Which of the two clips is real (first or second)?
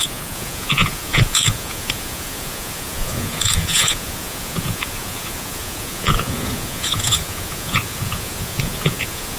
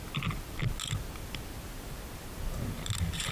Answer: second